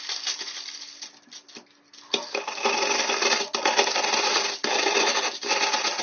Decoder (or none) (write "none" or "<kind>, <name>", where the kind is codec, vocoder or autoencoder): none